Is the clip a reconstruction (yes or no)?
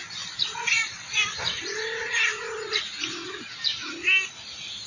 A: no